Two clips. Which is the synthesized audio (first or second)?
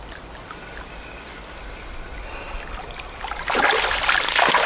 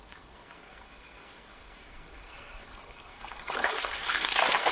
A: second